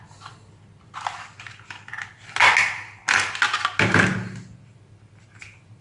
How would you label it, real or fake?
real